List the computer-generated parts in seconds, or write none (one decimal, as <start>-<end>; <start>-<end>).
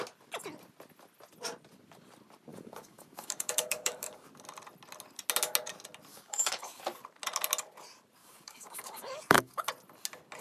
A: 2.5-4.3; 6.1-6.8; 8.2-9.7